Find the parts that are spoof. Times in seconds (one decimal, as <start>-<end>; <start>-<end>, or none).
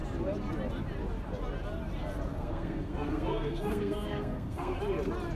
2.3-4.8